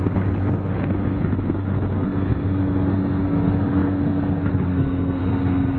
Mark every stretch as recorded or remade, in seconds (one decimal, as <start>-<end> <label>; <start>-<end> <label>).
0.0-5.8 remade